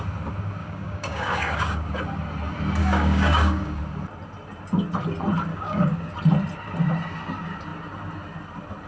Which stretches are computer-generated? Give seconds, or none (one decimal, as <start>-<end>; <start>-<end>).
0.6-1.9; 2.8-3.8; 5.5-6.1